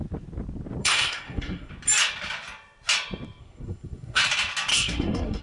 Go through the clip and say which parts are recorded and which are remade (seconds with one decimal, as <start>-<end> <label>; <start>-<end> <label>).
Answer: 0.0-0.8 recorded; 0.8-1.7 remade; 1.7-3.4 recorded; 3.4-4.2 remade; 4.2-4.7 recorded; 4.7-5.4 remade